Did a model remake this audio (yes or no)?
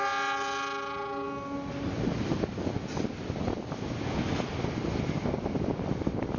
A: no